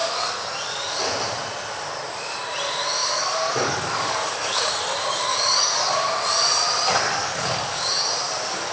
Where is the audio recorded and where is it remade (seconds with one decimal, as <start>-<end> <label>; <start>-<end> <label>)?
0.0-0.5 remade; 0.5-3.0 recorded; 3.0-4.7 remade; 4.7-5.3 recorded; 5.3-5.9 remade; 5.9-7.2 recorded; 7.2-8.1 remade; 8.1-8.7 recorded